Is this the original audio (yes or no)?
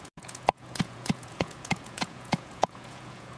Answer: no